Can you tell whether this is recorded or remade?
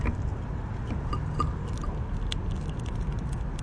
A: recorded